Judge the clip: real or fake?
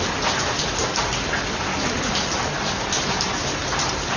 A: real